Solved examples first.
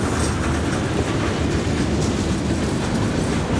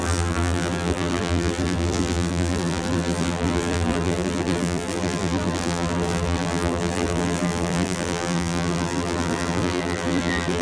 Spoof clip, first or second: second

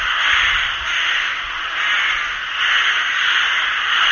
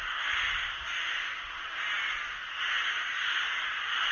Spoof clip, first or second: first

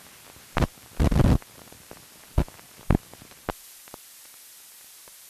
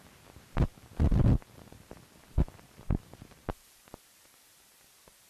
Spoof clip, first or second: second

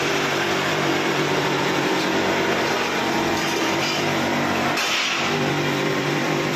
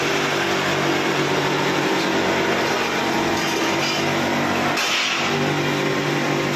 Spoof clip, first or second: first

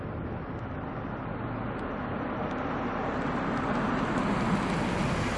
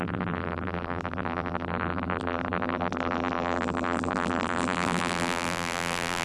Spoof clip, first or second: second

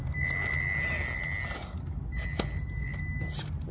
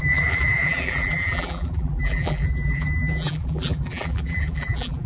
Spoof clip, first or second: second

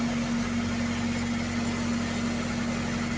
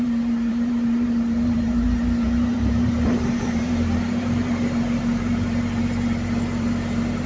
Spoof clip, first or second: second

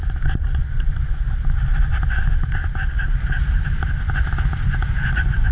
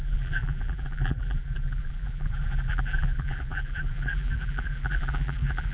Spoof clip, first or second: second